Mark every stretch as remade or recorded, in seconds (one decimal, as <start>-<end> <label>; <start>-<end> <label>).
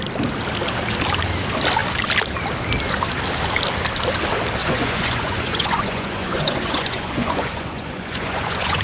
0.0-4.6 recorded; 4.6-8.8 remade